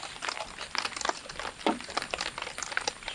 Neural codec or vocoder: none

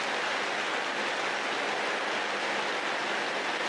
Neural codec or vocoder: none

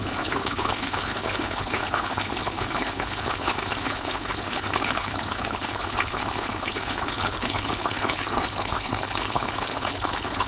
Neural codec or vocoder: codec, HILCodec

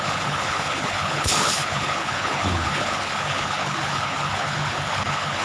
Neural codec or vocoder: codec, HILCodec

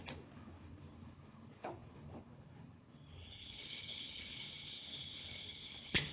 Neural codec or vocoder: codec, HILCodec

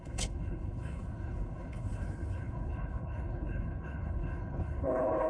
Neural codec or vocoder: codec, HILCodec